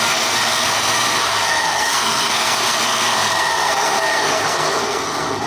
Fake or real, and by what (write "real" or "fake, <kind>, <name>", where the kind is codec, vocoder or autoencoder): fake, codec, SNAC